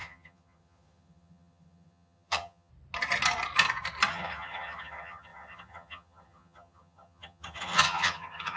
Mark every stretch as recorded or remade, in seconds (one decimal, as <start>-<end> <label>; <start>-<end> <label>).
0.0-2.7 remade; 2.7-4.1 recorded; 4.1-8.6 remade